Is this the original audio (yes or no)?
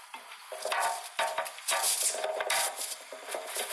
yes